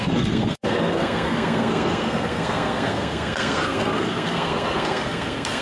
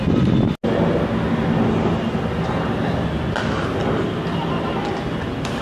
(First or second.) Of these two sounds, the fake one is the first